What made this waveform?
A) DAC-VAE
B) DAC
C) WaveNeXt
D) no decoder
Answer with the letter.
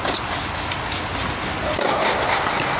D